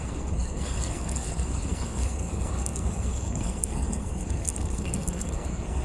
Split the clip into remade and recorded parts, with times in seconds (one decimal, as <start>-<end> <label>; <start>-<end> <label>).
0.0-5.8 remade